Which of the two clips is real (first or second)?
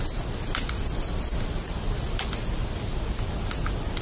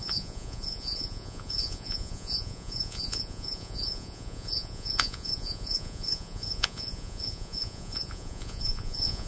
first